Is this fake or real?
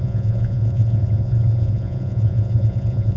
fake